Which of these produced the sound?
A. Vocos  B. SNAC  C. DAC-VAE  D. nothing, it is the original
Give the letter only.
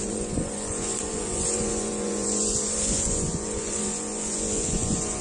A